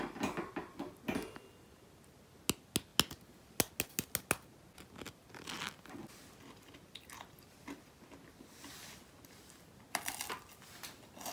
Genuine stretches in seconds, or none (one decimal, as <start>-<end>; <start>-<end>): 0.0-11.3